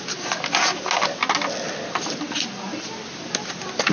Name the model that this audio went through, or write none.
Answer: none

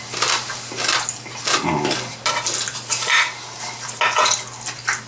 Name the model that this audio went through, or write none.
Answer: none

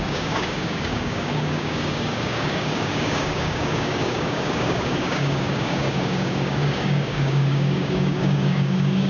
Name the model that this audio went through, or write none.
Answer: codec, DAC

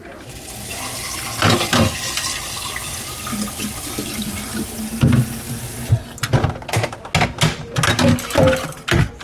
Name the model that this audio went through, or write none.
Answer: none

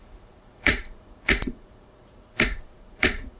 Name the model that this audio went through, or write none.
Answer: vocoder, Vocos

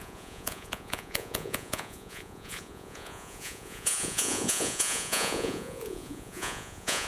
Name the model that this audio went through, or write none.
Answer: vocoder, Vocos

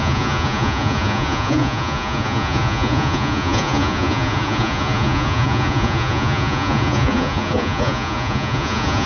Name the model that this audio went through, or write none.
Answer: vocoder, Vocos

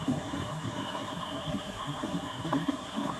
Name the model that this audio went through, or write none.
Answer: codec, SNAC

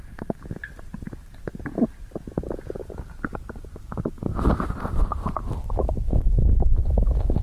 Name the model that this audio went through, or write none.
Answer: none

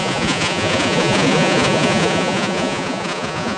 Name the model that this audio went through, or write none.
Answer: vocoder, Vocos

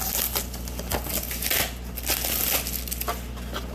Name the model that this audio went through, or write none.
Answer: none